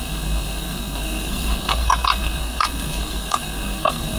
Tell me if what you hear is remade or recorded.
remade